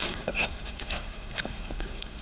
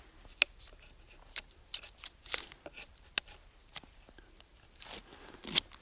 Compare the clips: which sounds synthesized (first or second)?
first